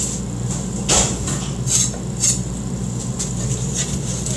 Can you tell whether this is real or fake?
real